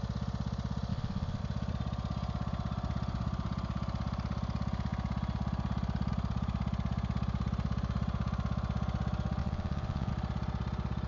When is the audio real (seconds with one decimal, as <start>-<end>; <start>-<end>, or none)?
0.0-0.9; 1.4-9.4; 10.1-11.1